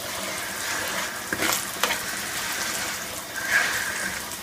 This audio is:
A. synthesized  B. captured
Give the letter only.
B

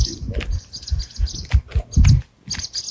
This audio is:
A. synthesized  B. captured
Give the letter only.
B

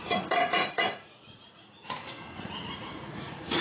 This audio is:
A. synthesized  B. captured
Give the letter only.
A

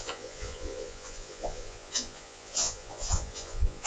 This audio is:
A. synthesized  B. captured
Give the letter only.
A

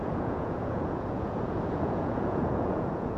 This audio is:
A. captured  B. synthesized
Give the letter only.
B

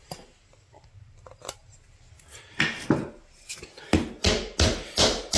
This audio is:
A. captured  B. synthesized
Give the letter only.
A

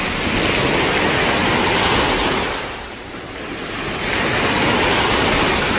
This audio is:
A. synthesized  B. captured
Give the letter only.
B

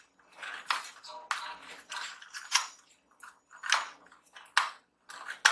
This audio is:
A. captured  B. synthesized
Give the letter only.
A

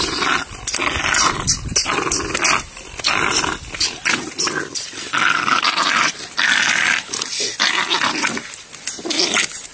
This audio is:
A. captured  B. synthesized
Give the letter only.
A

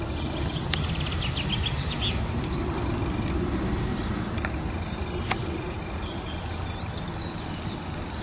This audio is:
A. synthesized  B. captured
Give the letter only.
B